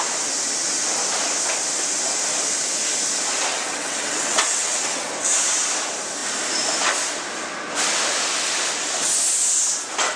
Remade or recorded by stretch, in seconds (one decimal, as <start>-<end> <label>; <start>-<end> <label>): 0.0-3.5 recorded; 3.5-5.1 remade; 5.1-10.2 recorded